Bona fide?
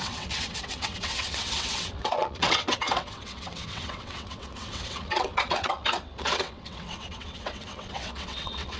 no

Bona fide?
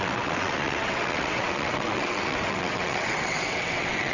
no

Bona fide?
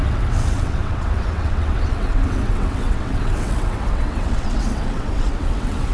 no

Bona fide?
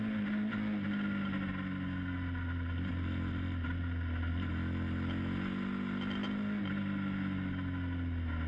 yes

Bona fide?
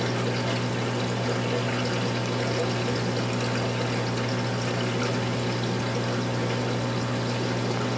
yes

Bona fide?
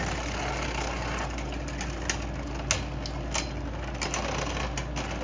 yes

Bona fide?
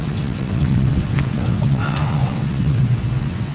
no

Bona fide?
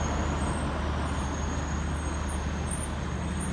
yes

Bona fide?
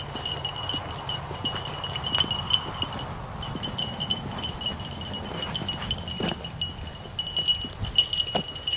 yes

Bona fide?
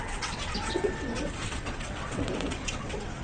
no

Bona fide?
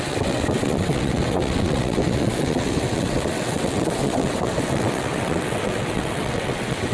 no